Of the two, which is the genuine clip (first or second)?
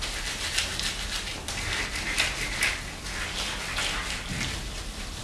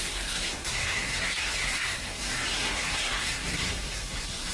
first